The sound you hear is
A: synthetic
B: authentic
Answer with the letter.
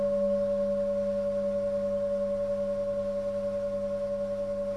B